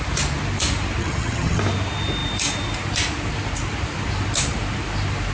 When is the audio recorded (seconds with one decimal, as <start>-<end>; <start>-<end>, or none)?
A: 0.0-1.0; 1.6-5.3